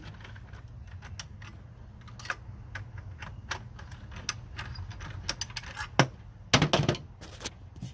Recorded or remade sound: recorded